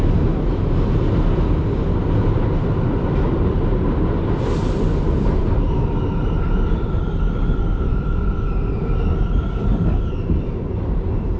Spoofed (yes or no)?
no